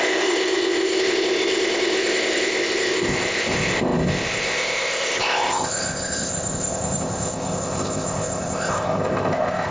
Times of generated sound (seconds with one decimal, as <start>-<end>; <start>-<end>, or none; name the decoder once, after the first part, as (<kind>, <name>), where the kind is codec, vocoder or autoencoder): 0.0-9.7 (codec, ZipCodec)